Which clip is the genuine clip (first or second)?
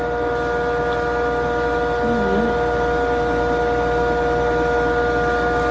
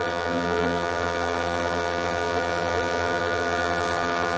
first